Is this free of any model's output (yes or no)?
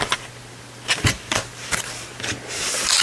yes